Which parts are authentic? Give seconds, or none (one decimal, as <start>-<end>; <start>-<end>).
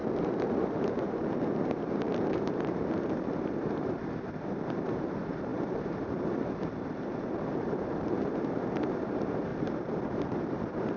0.0-0.7